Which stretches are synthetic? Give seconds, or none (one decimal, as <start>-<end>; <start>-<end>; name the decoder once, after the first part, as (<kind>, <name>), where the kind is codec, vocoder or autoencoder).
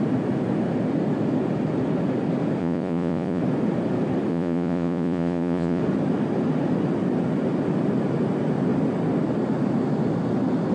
2.6-3.4 (vocoder, Vocos); 4.3-5.8